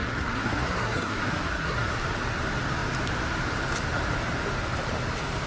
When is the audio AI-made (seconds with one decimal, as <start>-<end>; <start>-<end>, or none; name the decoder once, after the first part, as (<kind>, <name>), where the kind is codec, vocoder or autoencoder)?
0.0-1.9 (codec, SNAC)